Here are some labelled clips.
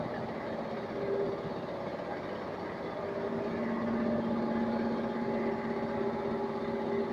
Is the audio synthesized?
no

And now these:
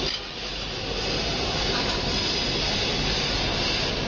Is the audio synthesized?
no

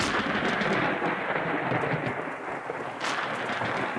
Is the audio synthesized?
no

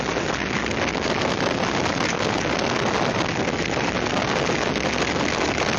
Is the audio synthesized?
no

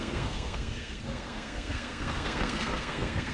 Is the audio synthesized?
yes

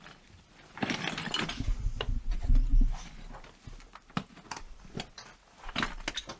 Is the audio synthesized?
no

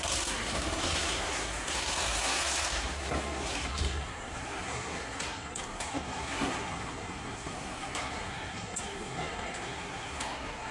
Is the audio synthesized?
yes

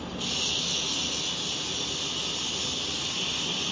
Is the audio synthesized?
no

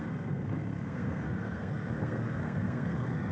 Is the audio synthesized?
yes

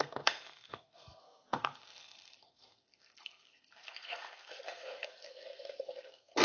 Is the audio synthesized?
yes